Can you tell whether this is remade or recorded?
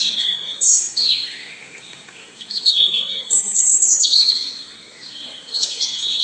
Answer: remade